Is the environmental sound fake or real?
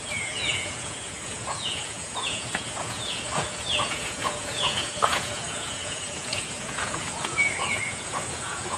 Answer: fake